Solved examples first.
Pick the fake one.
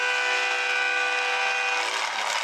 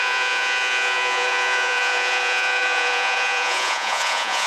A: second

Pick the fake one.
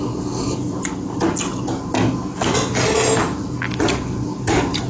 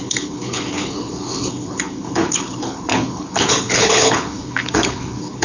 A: second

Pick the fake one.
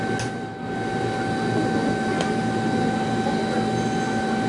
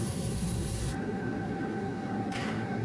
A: second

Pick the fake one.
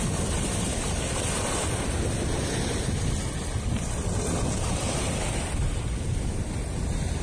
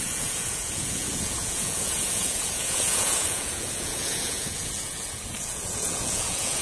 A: second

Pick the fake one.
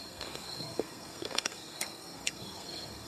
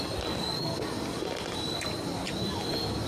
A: first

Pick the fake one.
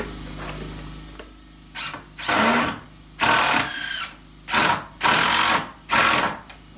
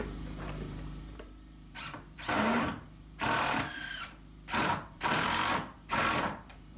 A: second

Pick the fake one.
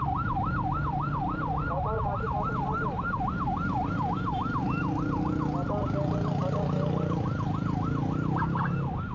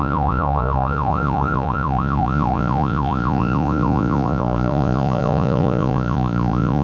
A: second